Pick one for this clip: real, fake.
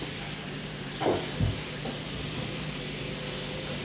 fake